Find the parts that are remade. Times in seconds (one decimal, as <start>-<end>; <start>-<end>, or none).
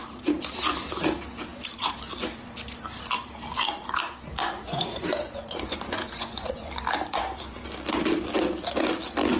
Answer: 4.4-6.7